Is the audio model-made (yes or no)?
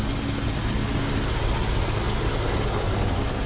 no